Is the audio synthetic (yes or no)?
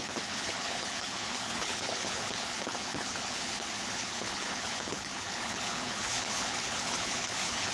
yes